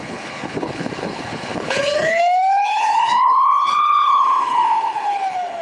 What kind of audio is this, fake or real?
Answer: fake